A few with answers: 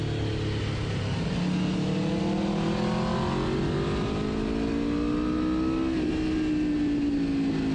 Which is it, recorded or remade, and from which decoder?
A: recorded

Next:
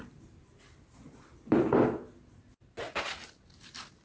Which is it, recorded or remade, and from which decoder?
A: recorded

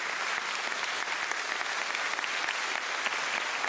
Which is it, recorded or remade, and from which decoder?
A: recorded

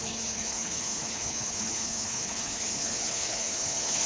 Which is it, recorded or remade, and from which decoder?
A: remade, codec, HILCodec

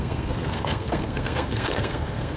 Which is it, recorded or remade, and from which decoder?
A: remade, codec, SNAC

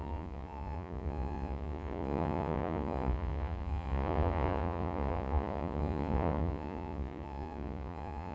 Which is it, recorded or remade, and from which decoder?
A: remade, vocoder, Vocos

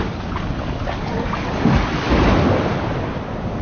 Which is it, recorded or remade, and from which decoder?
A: recorded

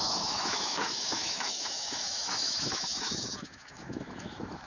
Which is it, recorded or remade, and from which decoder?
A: remade, autoencoder, DAC-VAE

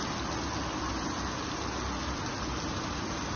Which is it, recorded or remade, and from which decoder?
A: recorded